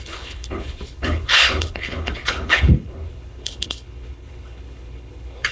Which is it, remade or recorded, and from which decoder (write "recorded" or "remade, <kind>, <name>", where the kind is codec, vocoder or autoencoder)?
remade, codec, HILCodec